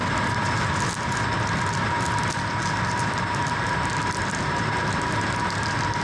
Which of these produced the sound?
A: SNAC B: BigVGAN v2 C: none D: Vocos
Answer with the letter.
C